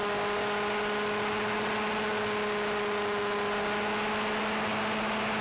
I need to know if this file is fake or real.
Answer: real